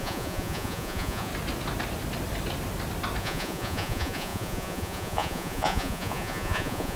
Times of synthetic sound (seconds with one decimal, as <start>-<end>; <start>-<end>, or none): 0.0-1.3; 3.2-7.0